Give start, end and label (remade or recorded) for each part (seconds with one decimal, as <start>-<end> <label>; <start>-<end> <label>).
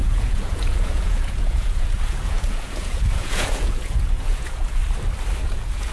0.0-4.8 remade; 4.8-5.4 recorded; 5.4-5.9 remade